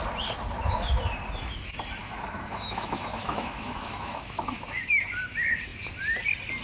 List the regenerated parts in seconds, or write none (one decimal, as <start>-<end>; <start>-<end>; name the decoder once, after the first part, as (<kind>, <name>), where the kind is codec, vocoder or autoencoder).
2.0-4.9 (autoencoder, DAC-VAE)